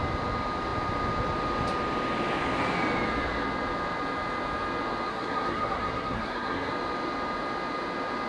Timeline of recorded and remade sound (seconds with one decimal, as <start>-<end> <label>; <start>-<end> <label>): 0.0-5.1 recorded; 5.1-6.7 remade; 6.7-8.3 recorded